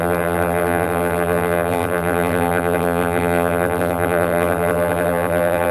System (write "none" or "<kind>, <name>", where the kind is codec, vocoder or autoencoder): vocoder, BigVGAN v2